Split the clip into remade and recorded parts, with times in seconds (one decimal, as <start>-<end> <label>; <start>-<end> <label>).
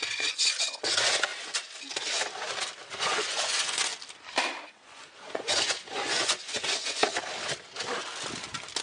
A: 0.0-1.3 remade; 1.3-3.0 recorded; 3.0-3.9 remade; 3.9-4.6 recorded; 4.6-7.0 remade; 7.0-8.8 recorded